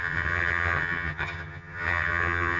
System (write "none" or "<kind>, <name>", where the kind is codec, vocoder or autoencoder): vocoder, HiFi-GAN